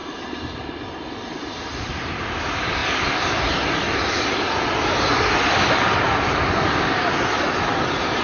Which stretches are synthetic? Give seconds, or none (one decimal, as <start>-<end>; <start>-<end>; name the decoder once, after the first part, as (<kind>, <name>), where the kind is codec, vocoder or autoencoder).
none